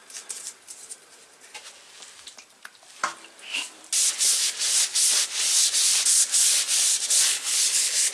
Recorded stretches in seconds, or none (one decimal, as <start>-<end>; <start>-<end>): 0.0-7.3